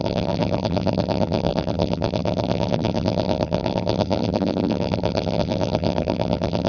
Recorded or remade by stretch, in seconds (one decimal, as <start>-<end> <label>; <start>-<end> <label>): 0.0-6.7 remade